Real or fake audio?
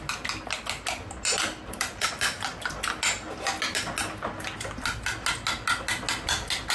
real